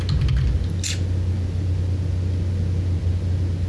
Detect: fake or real real